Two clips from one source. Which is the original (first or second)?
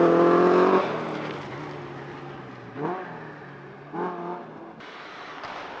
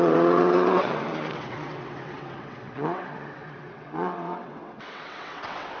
first